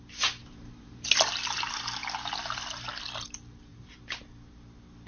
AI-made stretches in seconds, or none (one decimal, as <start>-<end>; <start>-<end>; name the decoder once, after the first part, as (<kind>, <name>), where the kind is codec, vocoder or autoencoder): 0.4-1.1 (vocoder, BigVGAN v2); 3.7-4.2